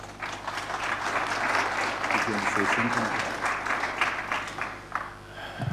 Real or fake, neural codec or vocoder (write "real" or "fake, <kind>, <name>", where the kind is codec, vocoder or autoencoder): real